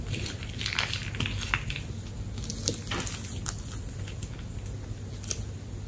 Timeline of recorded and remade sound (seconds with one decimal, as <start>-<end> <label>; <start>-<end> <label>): 0.0-5.9 recorded